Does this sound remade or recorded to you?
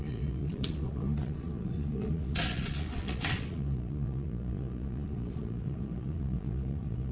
remade